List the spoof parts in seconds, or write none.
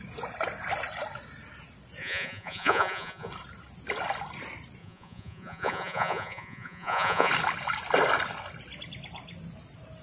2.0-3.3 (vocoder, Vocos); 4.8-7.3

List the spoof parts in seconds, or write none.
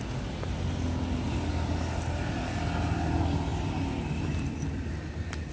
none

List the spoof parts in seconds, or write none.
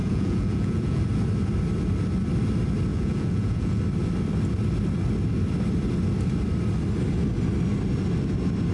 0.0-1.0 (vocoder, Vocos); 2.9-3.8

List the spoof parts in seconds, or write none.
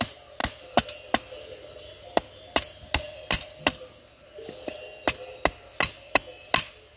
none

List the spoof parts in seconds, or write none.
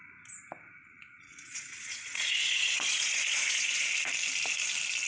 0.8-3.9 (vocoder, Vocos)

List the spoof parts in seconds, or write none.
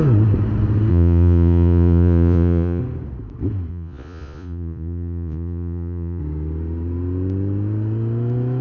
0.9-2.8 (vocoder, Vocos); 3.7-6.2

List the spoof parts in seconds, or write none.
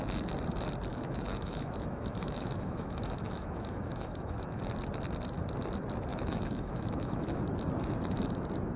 0.9-4.6 (autoencoder, DAC-VAE); 6.1-7.4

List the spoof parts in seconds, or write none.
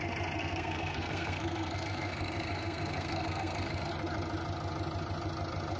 0.4-3.9 (codec, SNAC)